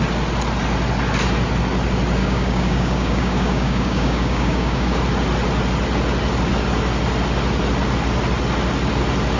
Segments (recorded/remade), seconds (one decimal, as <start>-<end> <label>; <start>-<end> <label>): 0.0-2.2 recorded; 2.2-5.0 remade; 5.0-9.4 recorded